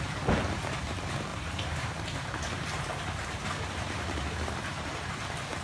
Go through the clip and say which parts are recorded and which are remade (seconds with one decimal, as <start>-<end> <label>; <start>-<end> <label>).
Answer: 0.0-1.3 recorded; 1.3-4.7 remade; 4.7-5.6 recorded